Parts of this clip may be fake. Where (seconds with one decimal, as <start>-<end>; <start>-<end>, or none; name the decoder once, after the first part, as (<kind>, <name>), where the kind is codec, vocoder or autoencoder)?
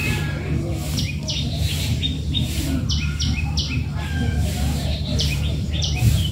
1.0-6.3 (vocoder, BigVGAN v2)